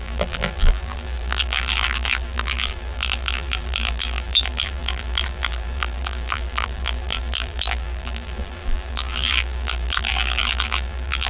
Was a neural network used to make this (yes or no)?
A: yes